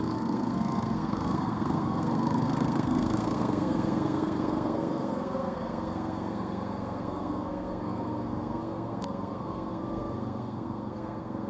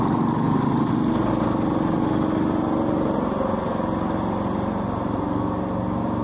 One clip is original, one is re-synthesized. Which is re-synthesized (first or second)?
first